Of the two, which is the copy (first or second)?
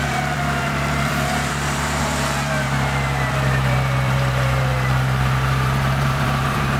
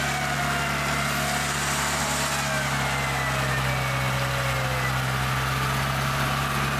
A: first